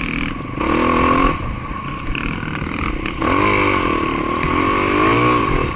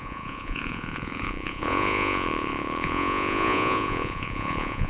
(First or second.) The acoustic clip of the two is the first